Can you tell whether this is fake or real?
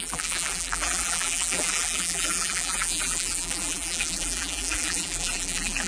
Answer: fake